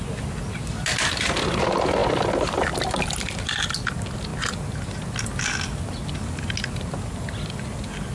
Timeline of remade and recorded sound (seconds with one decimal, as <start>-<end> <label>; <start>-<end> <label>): 0.0-8.1 recorded